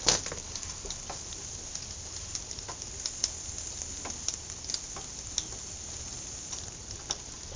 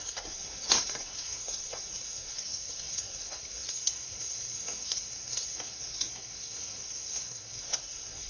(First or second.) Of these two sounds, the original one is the first